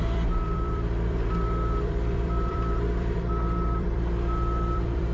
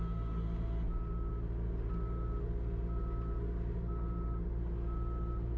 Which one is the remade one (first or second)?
first